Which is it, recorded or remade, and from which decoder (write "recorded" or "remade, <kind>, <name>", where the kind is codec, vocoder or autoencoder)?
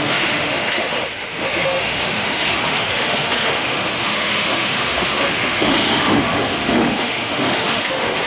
remade, autoencoder, DAC-VAE